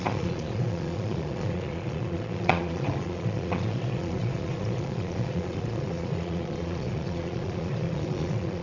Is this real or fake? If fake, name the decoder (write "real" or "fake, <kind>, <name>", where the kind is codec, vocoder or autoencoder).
fake, vocoder, Vocos